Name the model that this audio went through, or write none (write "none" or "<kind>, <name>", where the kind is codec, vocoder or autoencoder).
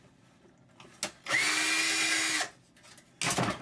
none